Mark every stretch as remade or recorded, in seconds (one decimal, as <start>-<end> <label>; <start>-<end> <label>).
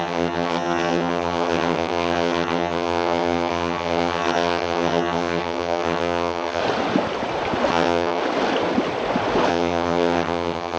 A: 0.0-6.6 remade; 6.6-7.7 recorded; 7.7-8.2 remade; 8.2-9.5 recorded; 9.5-10.8 remade